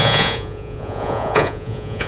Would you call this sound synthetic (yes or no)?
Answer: yes